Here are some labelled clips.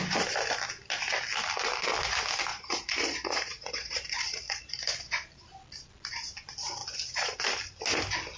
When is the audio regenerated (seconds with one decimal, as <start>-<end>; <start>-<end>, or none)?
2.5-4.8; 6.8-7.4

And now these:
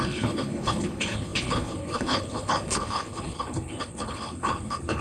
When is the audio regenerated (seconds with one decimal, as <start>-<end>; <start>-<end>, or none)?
0.0-5.0

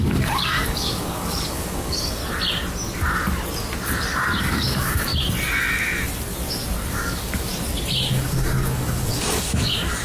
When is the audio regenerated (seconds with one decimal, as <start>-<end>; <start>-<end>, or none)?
0.0-2.2; 4.4-5.1; 6.9-7.5; 8.1-10.0

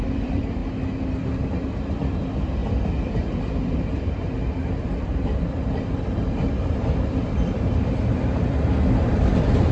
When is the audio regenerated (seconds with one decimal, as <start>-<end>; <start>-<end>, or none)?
0.0-0.6; 1.1-9.7

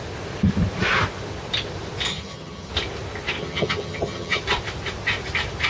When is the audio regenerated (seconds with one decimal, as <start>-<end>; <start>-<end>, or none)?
2.1-2.7; 3.4-4.4

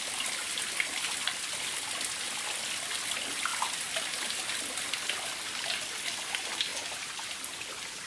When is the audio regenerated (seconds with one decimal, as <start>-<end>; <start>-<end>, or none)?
none

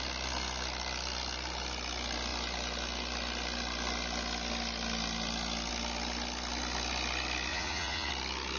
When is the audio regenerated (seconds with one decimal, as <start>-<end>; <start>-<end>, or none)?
7.5-8.1

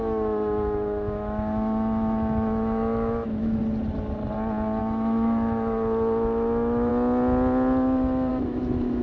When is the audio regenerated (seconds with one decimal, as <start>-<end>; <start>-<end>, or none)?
0.0-3.6; 4.8-6.9; 8.3-9.0